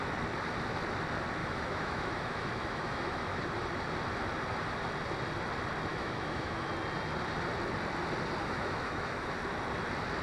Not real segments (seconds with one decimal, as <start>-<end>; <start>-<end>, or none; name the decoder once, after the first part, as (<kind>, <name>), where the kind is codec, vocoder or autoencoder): 1.4-3.4 (autoencoder, DAC-VAE); 5.9-6.7; 8.4-9.3